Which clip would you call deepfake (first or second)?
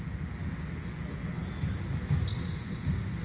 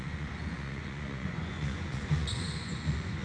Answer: second